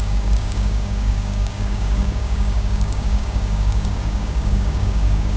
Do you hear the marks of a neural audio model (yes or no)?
yes